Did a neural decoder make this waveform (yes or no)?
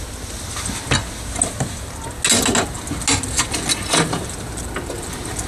no